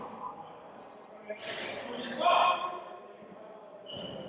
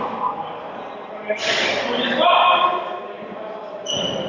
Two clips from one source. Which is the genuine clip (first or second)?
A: second